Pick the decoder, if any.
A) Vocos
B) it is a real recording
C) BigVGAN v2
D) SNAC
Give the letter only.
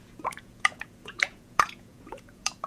A